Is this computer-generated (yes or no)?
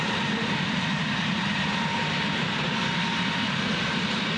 yes